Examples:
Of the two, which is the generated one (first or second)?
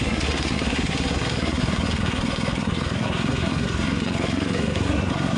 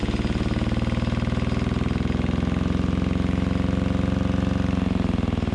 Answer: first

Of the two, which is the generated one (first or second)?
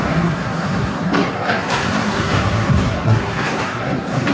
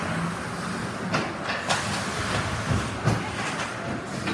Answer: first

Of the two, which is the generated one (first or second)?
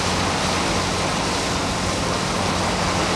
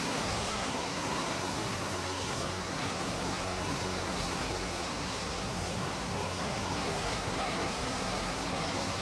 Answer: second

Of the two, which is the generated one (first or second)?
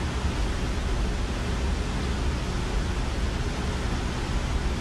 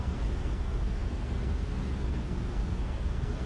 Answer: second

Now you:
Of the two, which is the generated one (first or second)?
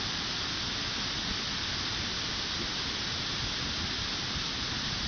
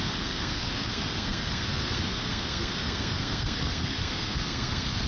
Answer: second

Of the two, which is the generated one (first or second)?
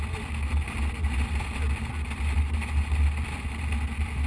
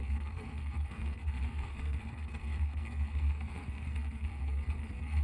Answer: second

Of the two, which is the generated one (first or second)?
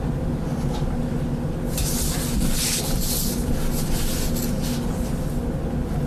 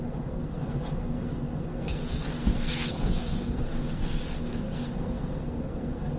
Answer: second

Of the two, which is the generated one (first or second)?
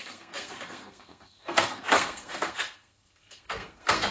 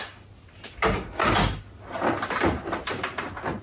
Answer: first